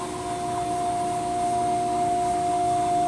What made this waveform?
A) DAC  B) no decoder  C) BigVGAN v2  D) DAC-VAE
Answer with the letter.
B